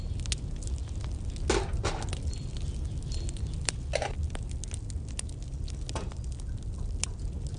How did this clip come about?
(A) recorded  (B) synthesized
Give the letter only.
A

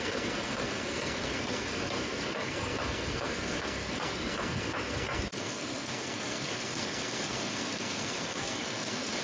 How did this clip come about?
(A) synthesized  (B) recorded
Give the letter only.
A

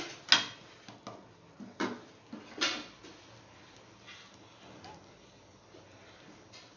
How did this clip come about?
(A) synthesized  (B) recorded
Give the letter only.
B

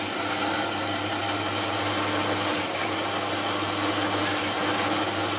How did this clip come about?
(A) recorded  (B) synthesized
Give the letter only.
A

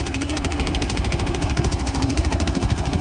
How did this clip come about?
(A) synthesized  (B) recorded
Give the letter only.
A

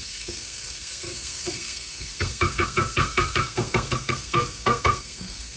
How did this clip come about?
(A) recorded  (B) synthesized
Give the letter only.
B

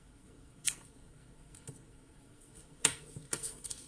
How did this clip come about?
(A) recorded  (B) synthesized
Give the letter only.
B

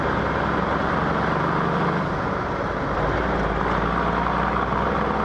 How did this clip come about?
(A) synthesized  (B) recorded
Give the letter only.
B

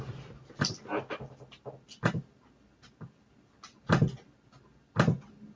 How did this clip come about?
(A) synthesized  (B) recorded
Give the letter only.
B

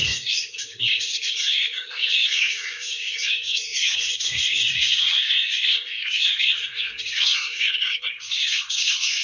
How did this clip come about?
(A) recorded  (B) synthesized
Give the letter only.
B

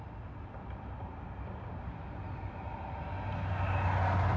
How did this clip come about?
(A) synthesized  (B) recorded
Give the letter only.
B